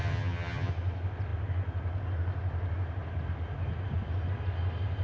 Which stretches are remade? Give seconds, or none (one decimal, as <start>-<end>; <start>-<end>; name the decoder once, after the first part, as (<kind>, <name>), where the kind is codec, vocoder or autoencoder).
0.0-0.7 (vocoder, HiFi-GAN)